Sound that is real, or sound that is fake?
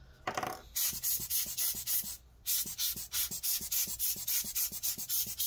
fake